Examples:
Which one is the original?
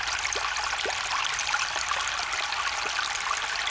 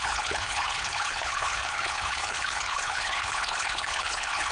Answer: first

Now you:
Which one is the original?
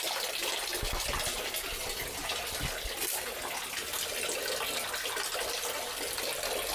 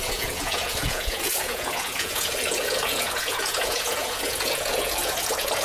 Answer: first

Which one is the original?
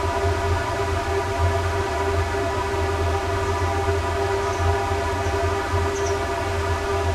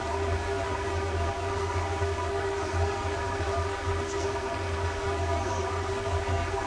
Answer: first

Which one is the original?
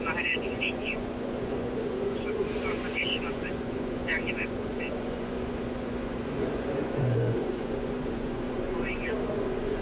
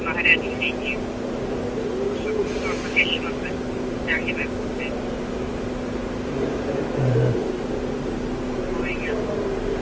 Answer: second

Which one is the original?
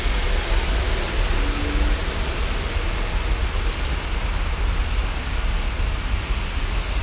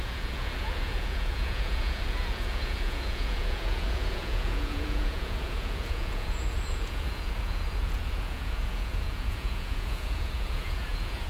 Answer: first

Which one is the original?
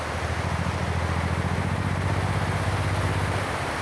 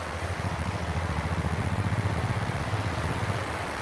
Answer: first